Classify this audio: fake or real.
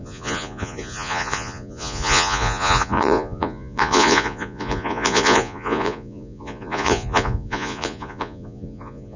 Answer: fake